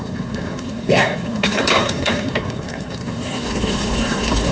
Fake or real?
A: fake